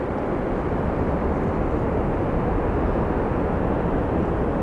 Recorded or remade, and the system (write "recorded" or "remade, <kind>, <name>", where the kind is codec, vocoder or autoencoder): recorded